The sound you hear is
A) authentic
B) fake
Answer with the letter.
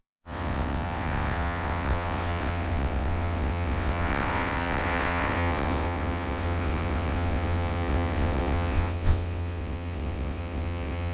B